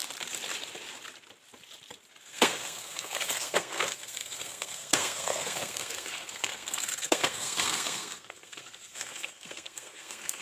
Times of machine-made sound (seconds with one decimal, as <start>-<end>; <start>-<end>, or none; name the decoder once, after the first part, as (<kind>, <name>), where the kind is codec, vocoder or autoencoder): 2.2-10.4 (codec, SNAC)

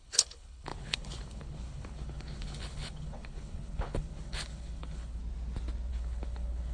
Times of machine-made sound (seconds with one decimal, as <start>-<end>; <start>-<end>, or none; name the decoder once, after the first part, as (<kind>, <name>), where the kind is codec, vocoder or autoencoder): 0.0-5.2 (codec, HILCodec); 5.9-6.7

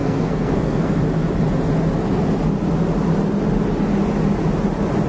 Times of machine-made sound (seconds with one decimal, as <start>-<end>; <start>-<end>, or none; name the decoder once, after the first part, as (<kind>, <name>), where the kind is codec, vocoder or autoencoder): 0.0-1.0 (codec, SNAC)

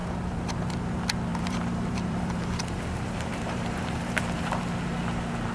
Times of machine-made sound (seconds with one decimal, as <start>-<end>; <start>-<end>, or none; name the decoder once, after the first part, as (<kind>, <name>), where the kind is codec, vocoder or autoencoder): 0.0-0.6 (vocoder, BigVGAN v2); 1.3-4.6

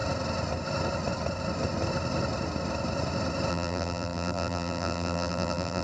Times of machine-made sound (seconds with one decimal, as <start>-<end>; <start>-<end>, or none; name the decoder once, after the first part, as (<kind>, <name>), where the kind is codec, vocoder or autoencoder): 3.5-5.8 (vocoder, BigVGAN v2)

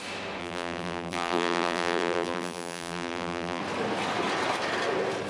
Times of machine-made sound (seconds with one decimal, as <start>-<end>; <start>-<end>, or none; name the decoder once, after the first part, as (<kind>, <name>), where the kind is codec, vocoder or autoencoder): 0.4-3.6 (vocoder, BigVGAN v2)

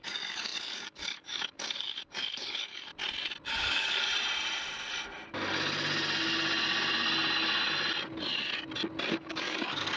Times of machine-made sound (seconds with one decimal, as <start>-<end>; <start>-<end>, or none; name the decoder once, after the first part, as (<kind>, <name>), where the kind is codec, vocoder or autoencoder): 0.0-2.9 (codec, DAC); 3.5-4.1; 9.1-10.0